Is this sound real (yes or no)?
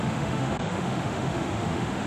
no